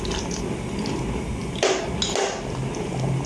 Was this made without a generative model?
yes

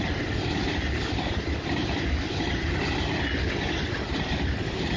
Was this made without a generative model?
yes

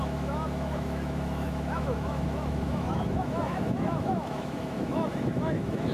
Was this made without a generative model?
no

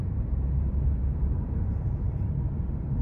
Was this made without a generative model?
no